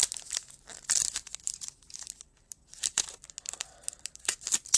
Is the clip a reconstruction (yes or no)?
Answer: no